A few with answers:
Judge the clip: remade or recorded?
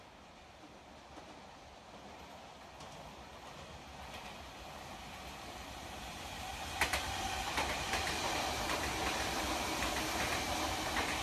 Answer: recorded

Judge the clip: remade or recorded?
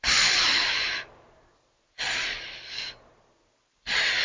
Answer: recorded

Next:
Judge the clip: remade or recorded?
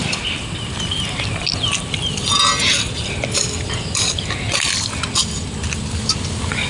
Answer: recorded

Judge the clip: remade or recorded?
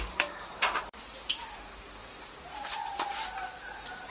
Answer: remade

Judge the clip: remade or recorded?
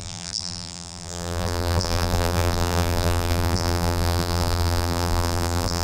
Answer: remade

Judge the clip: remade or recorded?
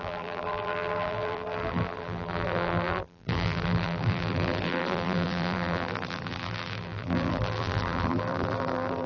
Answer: remade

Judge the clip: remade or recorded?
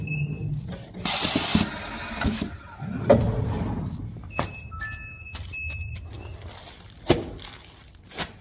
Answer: recorded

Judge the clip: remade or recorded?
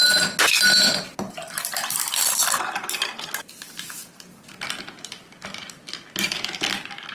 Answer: recorded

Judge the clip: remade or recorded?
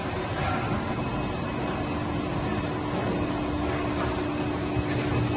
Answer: recorded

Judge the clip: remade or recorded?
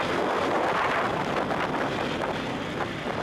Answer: recorded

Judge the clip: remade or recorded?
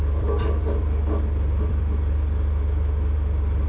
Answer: remade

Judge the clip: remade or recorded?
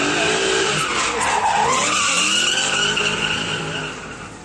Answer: recorded